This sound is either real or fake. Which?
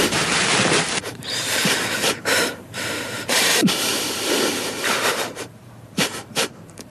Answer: fake